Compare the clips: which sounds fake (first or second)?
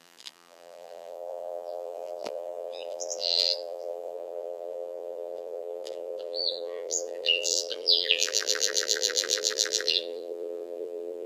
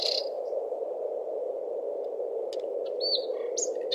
first